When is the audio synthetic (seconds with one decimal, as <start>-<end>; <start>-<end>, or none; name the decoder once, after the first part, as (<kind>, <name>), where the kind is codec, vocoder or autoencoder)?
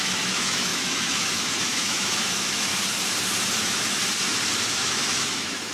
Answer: 0.0-2.7 (autoencoder, DAC-VAE); 3.6-4.0; 4.7-5.7